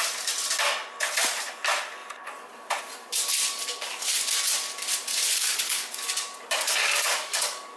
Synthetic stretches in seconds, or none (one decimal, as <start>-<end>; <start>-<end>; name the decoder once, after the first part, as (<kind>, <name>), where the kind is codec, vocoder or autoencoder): 3.5-4.2 (codec, DAC); 5.1-7.8